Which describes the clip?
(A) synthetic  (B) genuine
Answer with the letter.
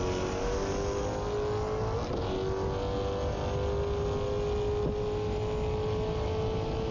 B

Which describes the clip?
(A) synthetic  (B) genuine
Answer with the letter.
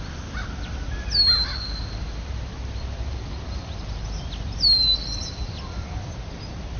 B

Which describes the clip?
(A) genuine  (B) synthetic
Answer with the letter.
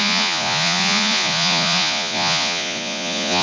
B